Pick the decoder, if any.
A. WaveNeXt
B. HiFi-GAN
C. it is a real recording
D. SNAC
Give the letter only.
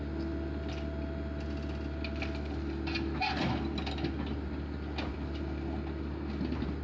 C